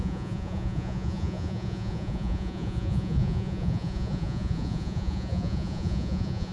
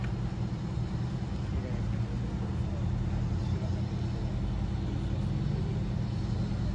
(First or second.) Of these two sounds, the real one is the second